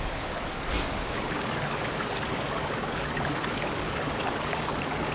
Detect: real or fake fake